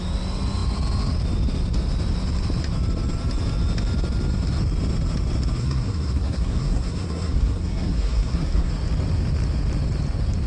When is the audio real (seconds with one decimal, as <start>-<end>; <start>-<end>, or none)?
0.0-5.6; 8.7-10.5